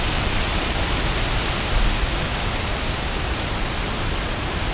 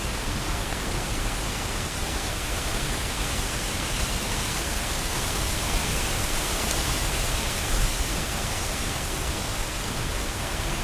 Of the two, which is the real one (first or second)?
first